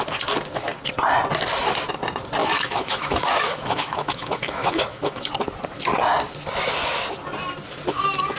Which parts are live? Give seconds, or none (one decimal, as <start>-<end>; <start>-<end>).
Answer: 0.0-2.4; 5.3-8.4

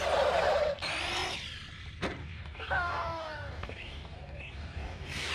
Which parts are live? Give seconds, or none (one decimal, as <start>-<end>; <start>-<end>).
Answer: 0.0-2.2

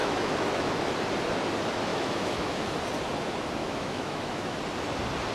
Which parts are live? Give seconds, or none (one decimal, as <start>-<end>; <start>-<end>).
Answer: 0.8-1.9; 2.8-3.6; 4.6-5.3

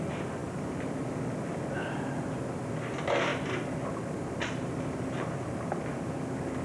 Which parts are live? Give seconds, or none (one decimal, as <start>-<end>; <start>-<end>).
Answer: 0.0-6.6

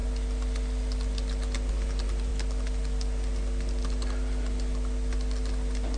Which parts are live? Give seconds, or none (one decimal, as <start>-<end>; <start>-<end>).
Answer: 0.0-1.7; 2.3-6.0

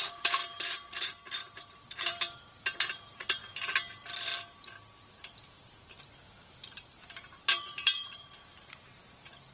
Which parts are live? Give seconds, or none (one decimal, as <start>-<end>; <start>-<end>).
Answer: 0.4-0.9; 3.4-3.9; 4.3-5.1